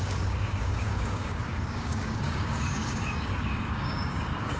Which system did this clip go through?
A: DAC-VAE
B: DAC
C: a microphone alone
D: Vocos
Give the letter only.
B